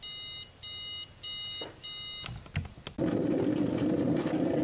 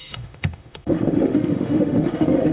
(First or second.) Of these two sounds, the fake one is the second